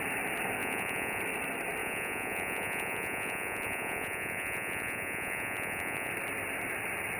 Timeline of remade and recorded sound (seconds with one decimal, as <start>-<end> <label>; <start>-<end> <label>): 0.0-0.6 recorded; 0.6-1.2 remade; 1.2-1.8 recorded; 1.8-6.1 remade; 6.1-7.2 recorded